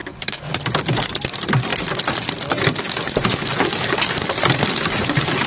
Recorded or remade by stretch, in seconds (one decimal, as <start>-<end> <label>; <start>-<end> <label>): 0.0-0.5 remade; 0.5-5.5 recorded